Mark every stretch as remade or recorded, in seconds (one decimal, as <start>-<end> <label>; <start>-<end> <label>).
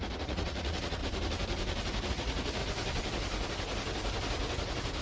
0.0-1.0 remade; 1.0-2.1 recorded; 2.1-2.6 remade; 2.6-5.0 recorded